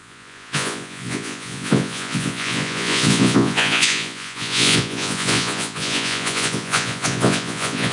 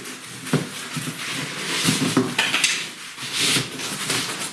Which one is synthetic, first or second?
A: first